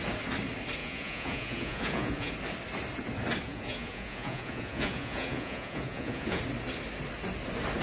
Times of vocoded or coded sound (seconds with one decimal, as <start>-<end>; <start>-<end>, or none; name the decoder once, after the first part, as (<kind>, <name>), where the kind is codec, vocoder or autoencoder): 0.8-2.3 (vocoder, Vocos); 3.5-6.4